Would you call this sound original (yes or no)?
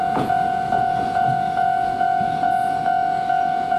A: no